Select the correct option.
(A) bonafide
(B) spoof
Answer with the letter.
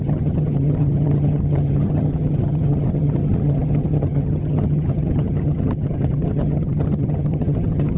B